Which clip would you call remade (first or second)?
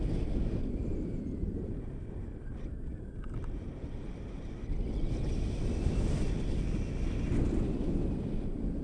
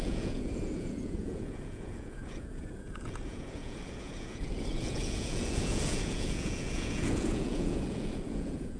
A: second